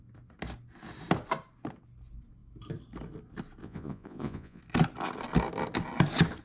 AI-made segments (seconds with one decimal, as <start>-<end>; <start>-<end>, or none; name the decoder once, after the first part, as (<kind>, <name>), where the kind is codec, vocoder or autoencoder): 3.6-4.6 (vocoder, Vocos)